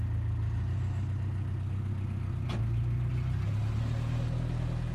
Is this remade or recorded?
recorded